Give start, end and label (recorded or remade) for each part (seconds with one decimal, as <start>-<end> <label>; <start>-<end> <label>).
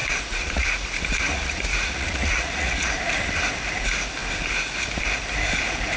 0.0-2.9 remade; 2.9-6.0 recorded